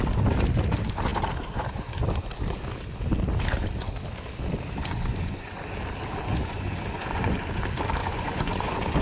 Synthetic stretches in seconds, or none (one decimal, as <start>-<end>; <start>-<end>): 4.8-5.6; 6.3-7.3; 8.0-9.0